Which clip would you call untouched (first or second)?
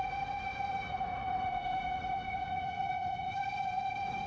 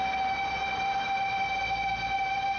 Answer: second